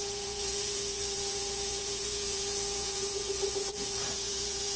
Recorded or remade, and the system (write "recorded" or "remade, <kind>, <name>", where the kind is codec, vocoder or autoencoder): remade, vocoder, Vocos